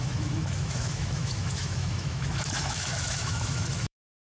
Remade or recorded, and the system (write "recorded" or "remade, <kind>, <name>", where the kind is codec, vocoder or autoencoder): remade, autoencoder, DAC-VAE